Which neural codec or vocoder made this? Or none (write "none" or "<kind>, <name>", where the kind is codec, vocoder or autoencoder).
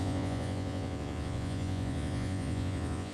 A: vocoder, Vocos